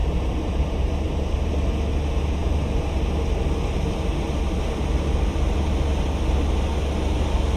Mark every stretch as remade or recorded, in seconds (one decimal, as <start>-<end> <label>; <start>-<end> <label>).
0.0-1.5 remade; 1.5-2.4 recorded; 2.4-3.0 remade; 3.0-7.6 recorded